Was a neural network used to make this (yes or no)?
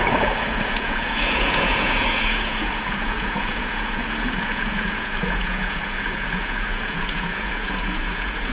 yes